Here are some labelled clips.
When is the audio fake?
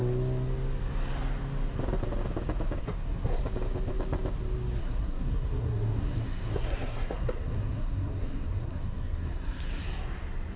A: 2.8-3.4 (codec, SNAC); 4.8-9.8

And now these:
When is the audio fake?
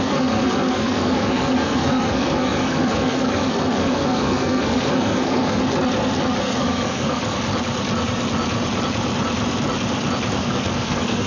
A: 0.0-5.6 (codec, SNAC); 6.4-7.2; 10.4-11.3